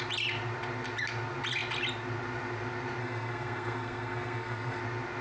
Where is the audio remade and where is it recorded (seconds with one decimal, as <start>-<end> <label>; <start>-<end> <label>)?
0.0-3.0 recorded; 3.0-4.8 remade; 4.8-5.2 recorded